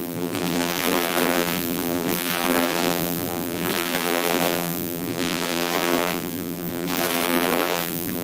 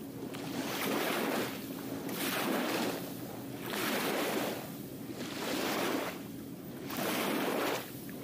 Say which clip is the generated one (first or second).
first